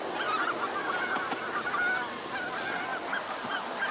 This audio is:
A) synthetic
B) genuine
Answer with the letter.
B